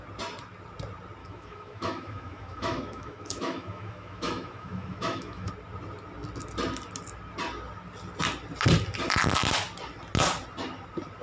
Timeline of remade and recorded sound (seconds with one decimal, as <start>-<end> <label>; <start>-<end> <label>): 0.0-1.2 recorded; 1.2-5.5 remade; 5.5-11.2 recorded